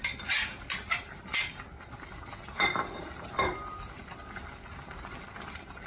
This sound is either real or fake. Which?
real